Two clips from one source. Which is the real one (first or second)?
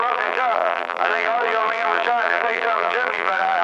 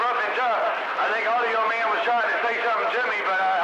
second